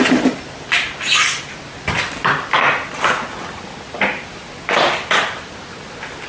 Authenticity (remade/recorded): recorded